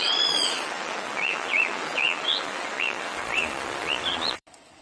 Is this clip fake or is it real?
fake